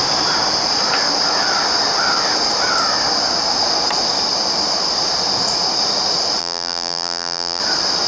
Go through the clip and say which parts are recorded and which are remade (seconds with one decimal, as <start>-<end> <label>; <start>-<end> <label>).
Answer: 0.0-6.4 recorded; 6.4-7.6 remade; 7.6-8.1 recorded